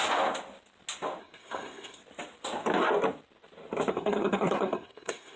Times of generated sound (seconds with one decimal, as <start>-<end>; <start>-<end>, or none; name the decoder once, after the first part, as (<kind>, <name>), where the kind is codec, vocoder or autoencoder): 1.2-2.0 (codec, SNAC); 3.9-5.4